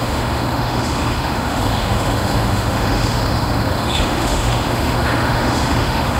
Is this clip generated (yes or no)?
yes